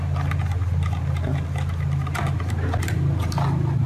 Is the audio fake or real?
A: real